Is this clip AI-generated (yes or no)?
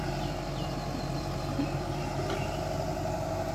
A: no